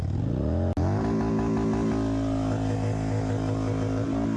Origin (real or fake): real